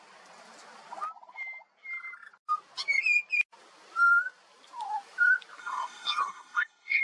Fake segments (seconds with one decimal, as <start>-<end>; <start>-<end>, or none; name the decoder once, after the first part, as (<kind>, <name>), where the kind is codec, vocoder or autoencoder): 5.6-7.0 (codec, SNAC)